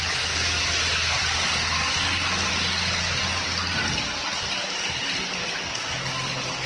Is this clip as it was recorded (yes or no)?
yes